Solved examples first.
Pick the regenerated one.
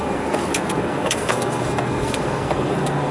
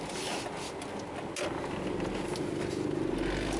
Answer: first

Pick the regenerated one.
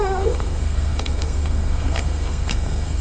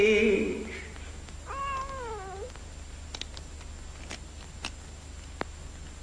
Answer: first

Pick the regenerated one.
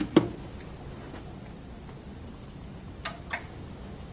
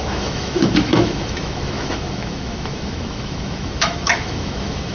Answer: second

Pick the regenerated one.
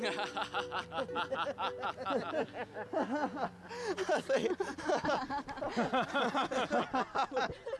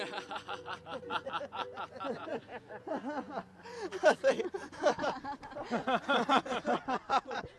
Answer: second